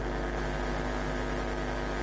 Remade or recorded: recorded